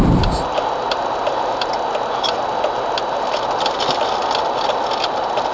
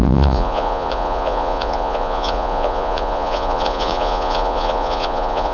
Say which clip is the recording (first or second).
first